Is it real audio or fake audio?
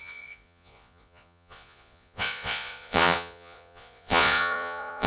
fake